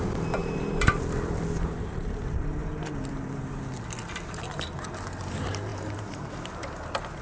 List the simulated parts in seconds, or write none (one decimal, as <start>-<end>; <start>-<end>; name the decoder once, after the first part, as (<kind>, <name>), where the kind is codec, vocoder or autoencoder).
0.4-1.0 (vocoder, BigVGAN v2); 2.6-3.6; 5.7-6.3